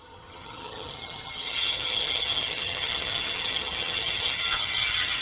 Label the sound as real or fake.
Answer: fake